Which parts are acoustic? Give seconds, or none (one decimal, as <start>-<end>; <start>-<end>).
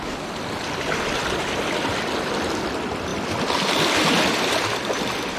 0.0-3.1; 4.5-5.4